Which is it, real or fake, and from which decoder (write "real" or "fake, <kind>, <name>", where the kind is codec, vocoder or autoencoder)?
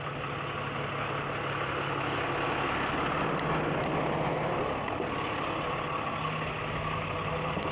real